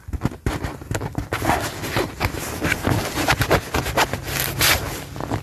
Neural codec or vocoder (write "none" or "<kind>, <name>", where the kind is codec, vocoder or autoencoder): none